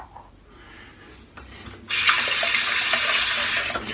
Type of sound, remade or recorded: recorded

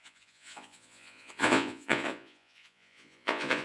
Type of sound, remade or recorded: remade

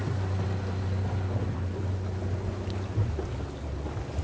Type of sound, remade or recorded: recorded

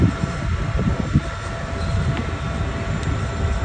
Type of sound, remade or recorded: recorded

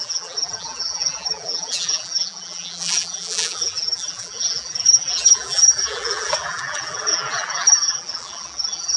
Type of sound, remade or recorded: remade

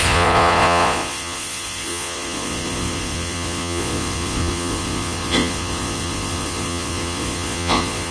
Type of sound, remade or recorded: remade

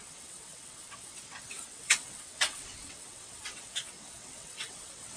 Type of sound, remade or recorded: remade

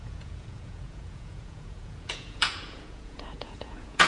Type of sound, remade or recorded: remade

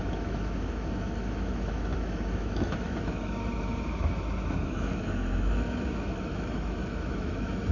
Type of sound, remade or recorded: remade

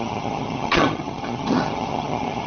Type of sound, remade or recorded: remade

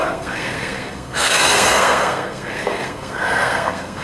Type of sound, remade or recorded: remade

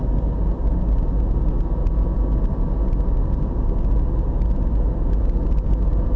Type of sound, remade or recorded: recorded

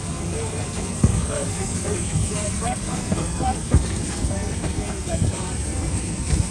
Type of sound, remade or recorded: remade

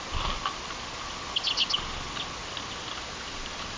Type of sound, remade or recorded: recorded